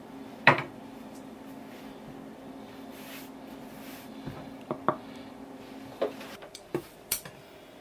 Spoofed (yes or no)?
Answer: yes